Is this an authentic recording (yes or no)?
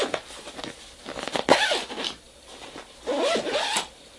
no